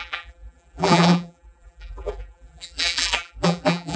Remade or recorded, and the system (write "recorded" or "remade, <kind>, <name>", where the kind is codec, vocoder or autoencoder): remade, vocoder, BigVGAN v2